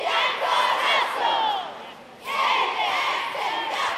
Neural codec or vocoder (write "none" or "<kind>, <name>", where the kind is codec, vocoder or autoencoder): vocoder, BigVGAN v2